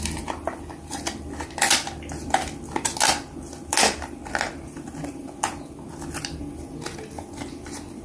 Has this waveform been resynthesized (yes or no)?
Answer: no